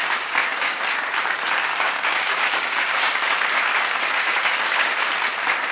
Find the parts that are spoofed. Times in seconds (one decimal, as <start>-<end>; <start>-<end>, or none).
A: 0.0-0.8; 1.7-5.1